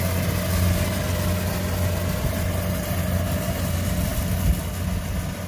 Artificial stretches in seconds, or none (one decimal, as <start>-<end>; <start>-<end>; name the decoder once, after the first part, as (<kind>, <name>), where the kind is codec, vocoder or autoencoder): none